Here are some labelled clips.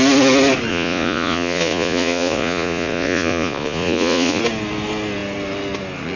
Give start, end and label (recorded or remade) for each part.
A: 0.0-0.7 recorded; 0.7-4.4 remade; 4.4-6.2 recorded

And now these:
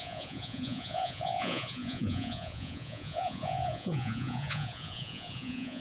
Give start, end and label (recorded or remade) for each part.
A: 0.0-5.8 remade

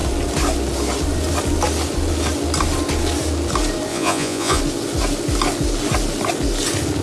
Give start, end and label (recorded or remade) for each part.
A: 0.0-3.9 recorded; 3.9-4.6 remade; 4.6-7.0 recorded

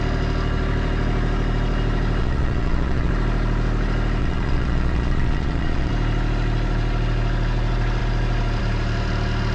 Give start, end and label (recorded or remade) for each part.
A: 0.0-2.2 recorded; 2.2-3.1 remade; 3.1-4.2 recorded; 4.2-5.9 remade; 5.9-9.5 recorded

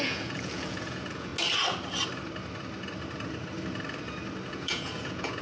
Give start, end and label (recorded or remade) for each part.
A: 0.0-1.3 remade; 1.3-4.5 recorded; 4.5-5.4 remade

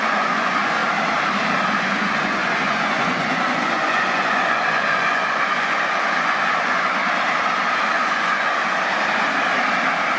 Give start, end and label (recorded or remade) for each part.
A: 0.0-0.8 remade; 0.8-1.9 recorded; 1.9-7.0 remade; 7.0-7.9 recorded; 7.9-8.6 remade; 8.6-10.2 recorded

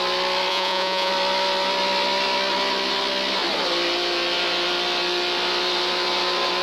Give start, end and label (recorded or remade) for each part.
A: 0.0-0.5 recorded; 0.5-1.1 remade; 1.1-6.6 recorded